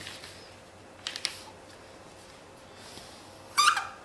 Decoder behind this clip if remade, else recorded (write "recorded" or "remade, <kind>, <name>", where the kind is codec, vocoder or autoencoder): recorded